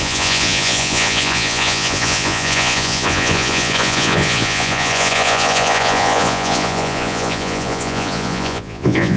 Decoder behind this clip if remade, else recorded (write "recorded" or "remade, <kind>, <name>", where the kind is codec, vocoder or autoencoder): remade, vocoder, Vocos